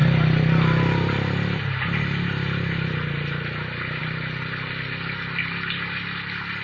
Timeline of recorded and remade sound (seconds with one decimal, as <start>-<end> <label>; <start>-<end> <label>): 0.0-6.6 recorded